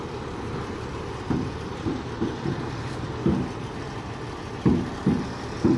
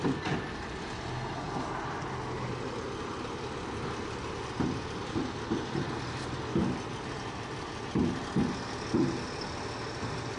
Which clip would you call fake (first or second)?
first